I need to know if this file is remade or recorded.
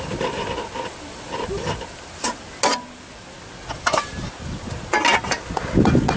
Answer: recorded